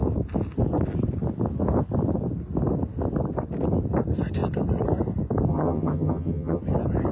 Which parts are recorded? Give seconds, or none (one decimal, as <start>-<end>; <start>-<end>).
0.0-5.5; 6.6-7.1